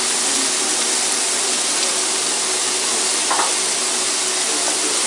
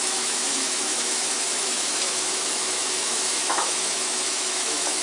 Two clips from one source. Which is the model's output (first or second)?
second